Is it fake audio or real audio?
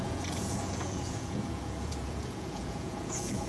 fake